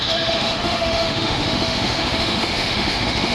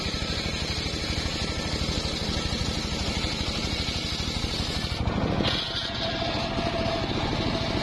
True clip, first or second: second